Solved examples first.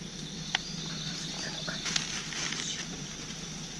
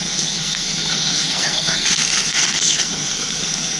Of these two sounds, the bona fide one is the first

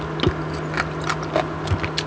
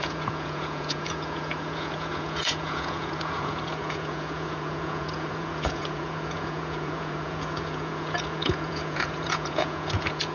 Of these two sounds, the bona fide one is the first